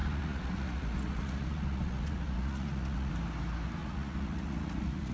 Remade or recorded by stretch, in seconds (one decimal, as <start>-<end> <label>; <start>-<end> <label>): 0.0-3.1 remade; 3.1-3.8 recorded; 3.8-5.1 remade